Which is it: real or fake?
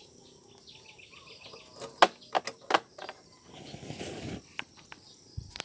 real